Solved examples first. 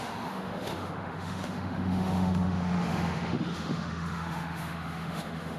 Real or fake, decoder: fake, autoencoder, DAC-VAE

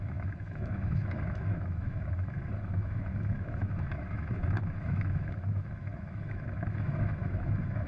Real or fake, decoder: fake, autoencoder, DAC-VAE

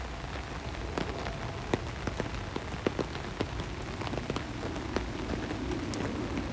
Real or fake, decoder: real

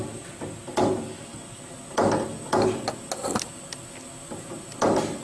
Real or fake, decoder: real